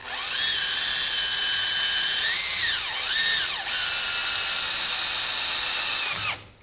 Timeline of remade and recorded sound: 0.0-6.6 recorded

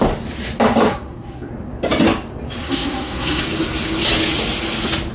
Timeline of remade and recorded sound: 0.0-0.9 recorded; 0.9-1.5 remade; 1.5-2.6 recorded; 2.6-3.4 remade; 3.4-5.1 recorded

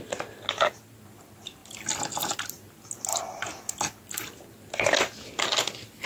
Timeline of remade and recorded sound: 0.0-6.1 recorded

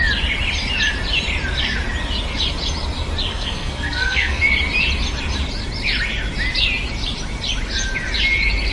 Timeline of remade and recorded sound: 0.0-3.3 recorded; 3.3-4.4 remade; 4.4-8.7 recorded

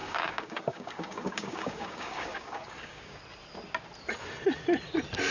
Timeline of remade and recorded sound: 0.0-3.2 remade; 3.2-5.3 recorded

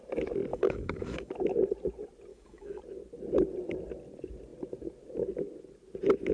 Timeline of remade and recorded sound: 0.0-0.5 recorded; 0.5-1.3 remade; 1.3-2.3 recorded; 2.3-2.8 remade; 2.8-6.3 recorded